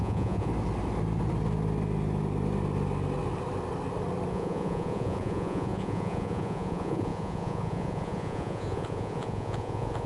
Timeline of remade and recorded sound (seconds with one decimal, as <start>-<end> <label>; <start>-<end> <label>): 0.0-0.5 remade; 0.5-4.3 recorded; 4.3-10.1 remade